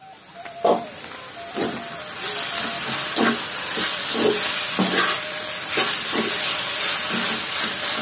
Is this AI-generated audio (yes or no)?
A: no